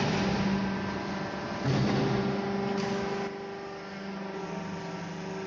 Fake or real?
real